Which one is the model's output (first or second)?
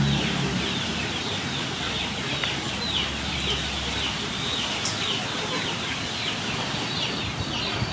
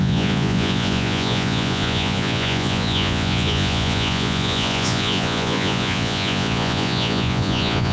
second